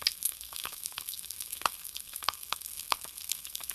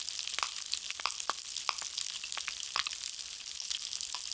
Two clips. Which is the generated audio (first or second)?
first